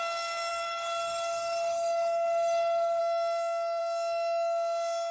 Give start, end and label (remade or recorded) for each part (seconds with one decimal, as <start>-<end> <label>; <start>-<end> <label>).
0.0-0.5 recorded; 0.5-3.0 remade; 3.0-5.1 recorded